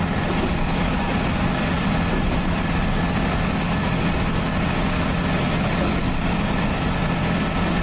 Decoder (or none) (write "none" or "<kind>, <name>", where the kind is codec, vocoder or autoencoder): none